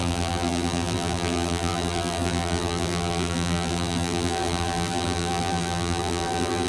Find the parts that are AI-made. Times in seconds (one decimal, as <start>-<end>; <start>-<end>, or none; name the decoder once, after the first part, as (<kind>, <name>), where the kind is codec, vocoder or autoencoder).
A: 0.0-6.7 (vocoder, BigVGAN v2)